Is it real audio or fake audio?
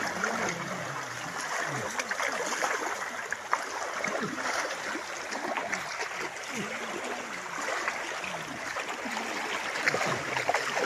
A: real